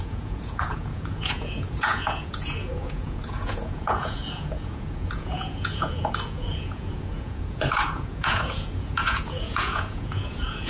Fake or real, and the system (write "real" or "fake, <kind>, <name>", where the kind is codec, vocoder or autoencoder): fake, vocoder, Vocos